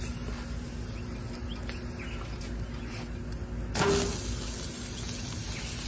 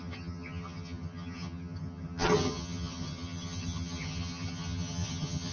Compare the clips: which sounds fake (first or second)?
second